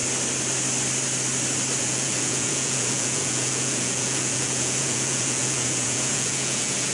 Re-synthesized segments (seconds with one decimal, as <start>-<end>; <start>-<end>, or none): 1.8-6.9